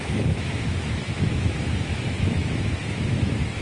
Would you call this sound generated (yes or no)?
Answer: yes